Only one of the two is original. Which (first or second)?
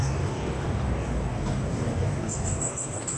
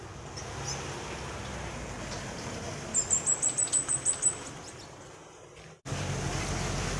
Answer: second